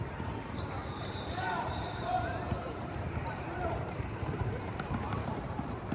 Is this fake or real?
fake